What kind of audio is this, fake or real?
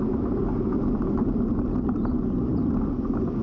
real